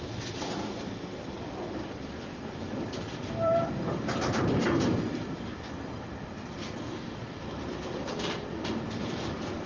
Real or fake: fake